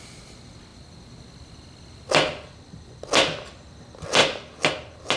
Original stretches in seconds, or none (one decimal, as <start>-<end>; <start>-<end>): 0.0-5.2